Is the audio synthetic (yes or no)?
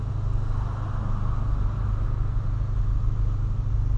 no